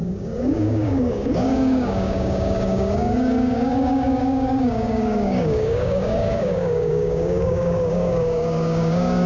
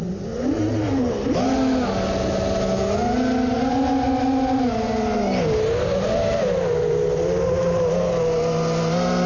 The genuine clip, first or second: second